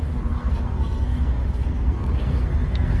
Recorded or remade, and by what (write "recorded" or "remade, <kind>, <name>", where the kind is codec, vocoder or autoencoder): remade, codec, SNAC